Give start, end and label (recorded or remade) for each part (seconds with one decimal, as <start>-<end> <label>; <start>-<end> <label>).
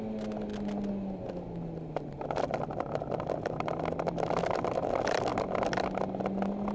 0.0-6.7 recorded